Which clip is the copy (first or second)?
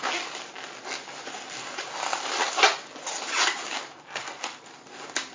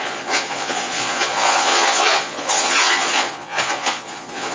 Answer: second